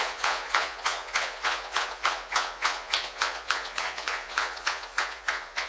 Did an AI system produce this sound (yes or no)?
yes